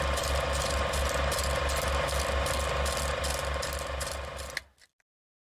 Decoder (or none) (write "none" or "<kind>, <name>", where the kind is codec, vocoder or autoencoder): none